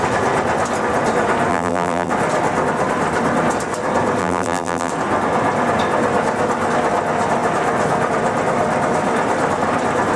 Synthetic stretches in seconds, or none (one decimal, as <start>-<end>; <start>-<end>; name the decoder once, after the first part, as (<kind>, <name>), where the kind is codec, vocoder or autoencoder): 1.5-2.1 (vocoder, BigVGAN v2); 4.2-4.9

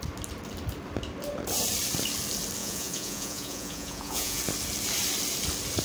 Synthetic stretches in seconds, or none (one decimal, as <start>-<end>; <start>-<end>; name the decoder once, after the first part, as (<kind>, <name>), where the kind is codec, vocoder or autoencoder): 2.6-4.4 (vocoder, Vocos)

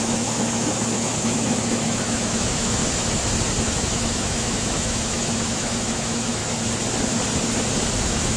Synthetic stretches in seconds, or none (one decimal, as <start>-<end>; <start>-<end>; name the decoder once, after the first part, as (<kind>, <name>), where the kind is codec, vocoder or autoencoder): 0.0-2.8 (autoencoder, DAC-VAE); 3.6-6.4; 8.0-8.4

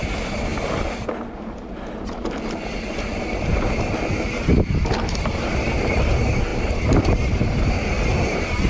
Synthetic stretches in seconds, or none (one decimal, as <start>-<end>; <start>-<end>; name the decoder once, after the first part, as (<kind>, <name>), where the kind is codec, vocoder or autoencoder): 0.0-0.5 (vocoder, BigVGAN v2); 5.1-8.7